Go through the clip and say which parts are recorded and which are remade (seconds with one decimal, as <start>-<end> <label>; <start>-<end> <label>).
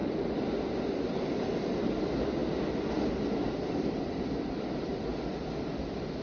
0.0-2.0 recorded; 2.0-2.4 remade; 2.4-3.7 recorded; 3.7-5.1 remade; 5.1-5.8 recorded; 5.8-6.2 remade